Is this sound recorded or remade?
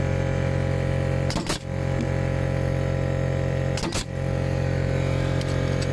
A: recorded